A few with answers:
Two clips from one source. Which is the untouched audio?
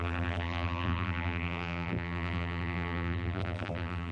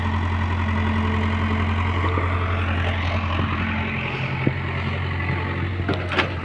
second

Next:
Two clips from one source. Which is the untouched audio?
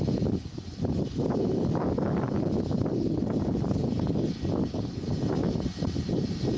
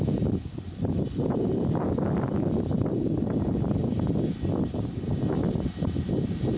first